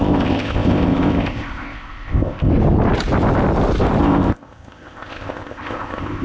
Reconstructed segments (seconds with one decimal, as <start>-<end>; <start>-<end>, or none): 0.0-2.5; 4.0-6.2